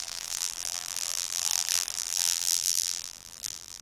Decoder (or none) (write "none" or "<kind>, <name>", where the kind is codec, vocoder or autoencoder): vocoder, BigVGAN v2